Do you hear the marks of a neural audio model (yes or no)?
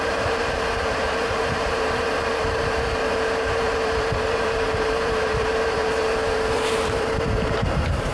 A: yes